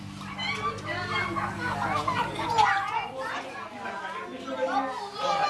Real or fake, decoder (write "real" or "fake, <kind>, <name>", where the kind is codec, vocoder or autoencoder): real